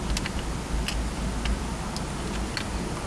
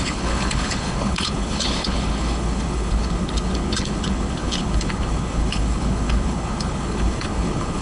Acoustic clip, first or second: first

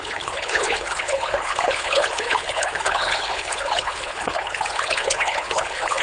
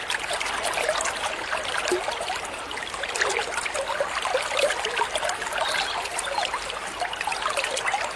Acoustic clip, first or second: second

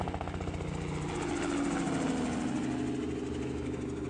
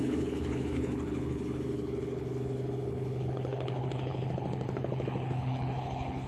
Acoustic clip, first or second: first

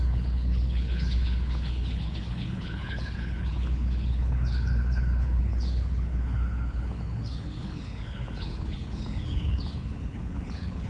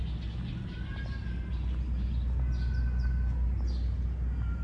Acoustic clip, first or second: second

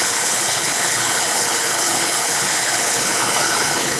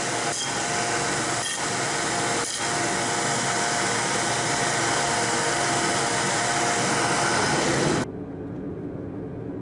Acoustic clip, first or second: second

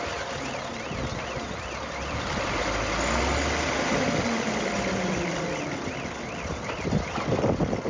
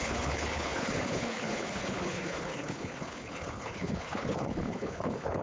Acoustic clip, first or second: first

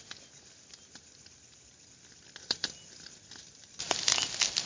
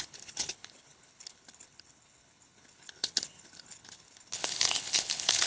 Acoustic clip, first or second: first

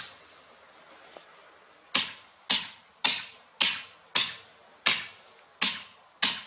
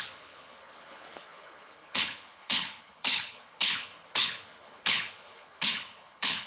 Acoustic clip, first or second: first